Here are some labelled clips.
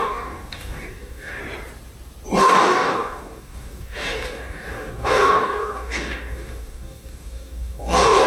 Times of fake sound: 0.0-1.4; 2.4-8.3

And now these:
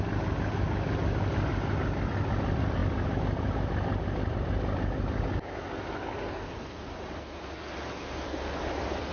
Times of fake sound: none

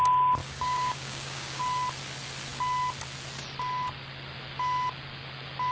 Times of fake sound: 0.4-1.6